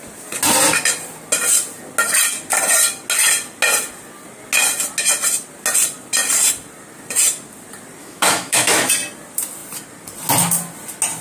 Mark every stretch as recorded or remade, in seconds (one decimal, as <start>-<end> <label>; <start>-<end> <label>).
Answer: 0.0-8.0 recorded; 8.0-8.9 remade; 8.9-11.2 recorded